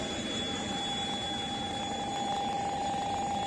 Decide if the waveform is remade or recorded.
recorded